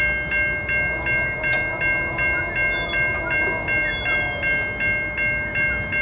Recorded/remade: recorded